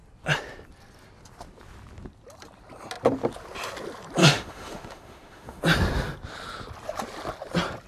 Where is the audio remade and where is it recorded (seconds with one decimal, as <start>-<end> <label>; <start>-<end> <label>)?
0.0-4.2 recorded; 4.2-5.6 remade; 5.6-7.9 recorded